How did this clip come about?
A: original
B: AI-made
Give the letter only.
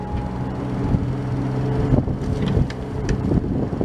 A